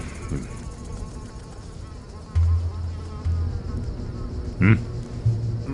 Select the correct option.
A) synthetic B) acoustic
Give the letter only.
B